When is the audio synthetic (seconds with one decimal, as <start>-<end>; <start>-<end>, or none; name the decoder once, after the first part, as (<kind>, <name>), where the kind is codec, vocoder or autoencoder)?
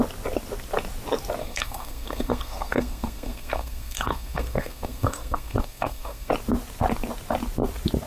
1.4-6.3 (codec, SNAC)